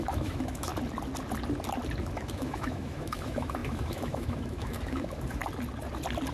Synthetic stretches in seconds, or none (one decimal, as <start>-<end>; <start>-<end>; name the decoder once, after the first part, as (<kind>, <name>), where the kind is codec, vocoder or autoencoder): 0.0-0.7 (autoencoder, DAC-VAE); 2.0-5.4